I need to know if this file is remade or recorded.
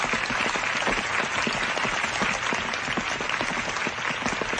recorded